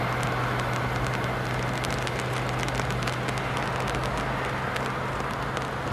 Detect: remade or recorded recorded